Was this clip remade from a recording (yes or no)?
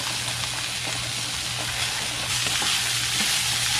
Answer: no